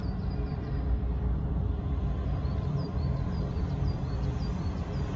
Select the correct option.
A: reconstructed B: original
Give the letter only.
A